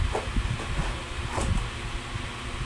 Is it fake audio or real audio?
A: real